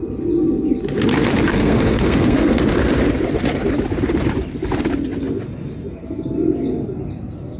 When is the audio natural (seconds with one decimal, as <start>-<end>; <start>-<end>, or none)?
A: 0.0-1.5; 2.6-7.6